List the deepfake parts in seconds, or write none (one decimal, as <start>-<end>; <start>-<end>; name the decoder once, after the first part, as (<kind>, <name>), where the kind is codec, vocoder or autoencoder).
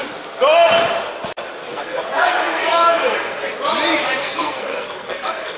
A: 1.7-3.4 (codec, SNAC); 4.2-5.6